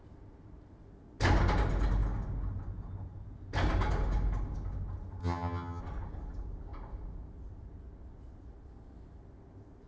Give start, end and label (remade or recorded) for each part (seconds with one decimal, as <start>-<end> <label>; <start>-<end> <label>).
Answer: 0.0-5.2 recorded; 5.2-5.8 remade; 5.8-9.9 recorded